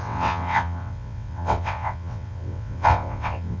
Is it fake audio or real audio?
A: fake